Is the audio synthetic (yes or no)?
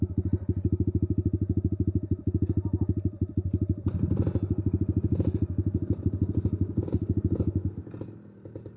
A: no